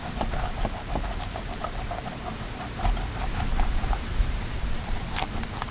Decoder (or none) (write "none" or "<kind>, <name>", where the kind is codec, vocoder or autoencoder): vocoder, BigVGAN v2